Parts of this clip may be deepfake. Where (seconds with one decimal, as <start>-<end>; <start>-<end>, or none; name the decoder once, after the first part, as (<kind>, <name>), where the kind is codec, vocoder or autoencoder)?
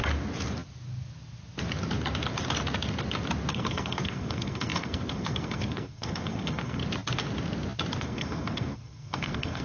3.5-6.8 (codec, SNAC); 8.0-9.6